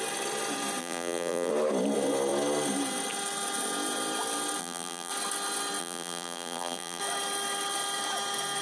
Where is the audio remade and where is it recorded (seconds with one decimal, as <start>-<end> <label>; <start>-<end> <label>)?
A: 0.0-0.8 recorded; 0.8-1.5 remade; 1.5-4.6 recorded; 4.6-5.1 remade; 5.1-5.8 recorded; 5.8-7.0 remade; 7.0-8.6 recorded